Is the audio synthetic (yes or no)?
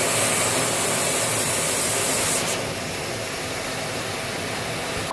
no